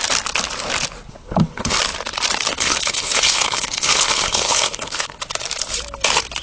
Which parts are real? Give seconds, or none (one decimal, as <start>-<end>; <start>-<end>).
0.0-1.1; 1.8-2.5; 5.2-6.4